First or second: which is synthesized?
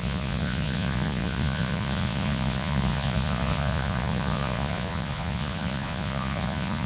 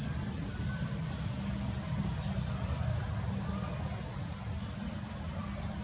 first